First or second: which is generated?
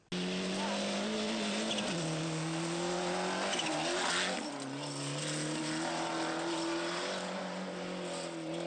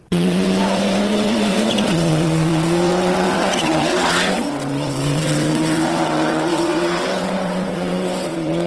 second